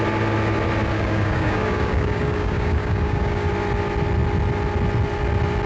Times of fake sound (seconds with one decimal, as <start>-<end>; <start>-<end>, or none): 0.9-3.5